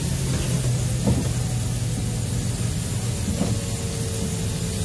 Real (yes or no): yes